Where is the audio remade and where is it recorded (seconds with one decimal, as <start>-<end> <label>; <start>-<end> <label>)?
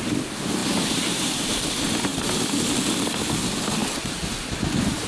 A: 0.0-0.6 recorded; 0.6-1.6 remade; 1.6-2.1 recorded; 2.1-2.6 remade; 2.6-3.8 recorded; 3.8-5.1 remade